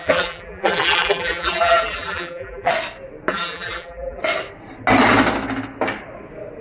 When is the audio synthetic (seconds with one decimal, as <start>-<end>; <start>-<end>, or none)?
0.0-2.7; 3.3-4.2